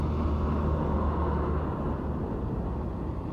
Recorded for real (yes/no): yes